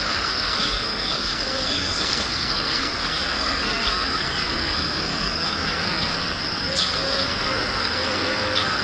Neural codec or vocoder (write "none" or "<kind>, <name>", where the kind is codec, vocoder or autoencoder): codec, SNAC